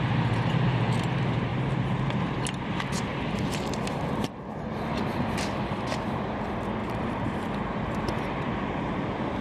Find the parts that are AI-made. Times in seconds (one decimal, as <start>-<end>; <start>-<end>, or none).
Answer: 1.5-2.3; 6.8-8.9